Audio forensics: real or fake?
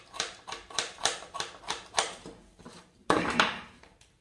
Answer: fake